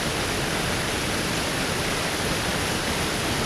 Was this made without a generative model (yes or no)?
yes